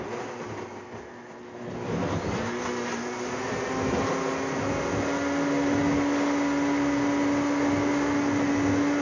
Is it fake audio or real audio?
real